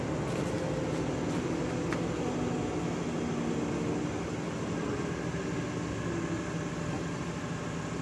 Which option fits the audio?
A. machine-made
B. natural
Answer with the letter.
B